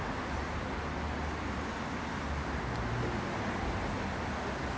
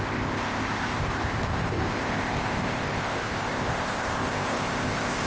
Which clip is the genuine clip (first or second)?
first